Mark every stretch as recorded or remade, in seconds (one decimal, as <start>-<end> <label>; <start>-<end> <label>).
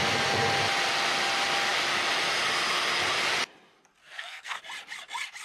0.0-4.0 recorded; 4.0-4.6 remade; 4.6-5.4 recorded